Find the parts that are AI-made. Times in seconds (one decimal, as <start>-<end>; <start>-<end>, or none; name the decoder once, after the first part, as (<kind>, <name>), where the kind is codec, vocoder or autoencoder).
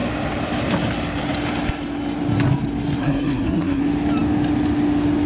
3.0-3.8 (codec, SNAC)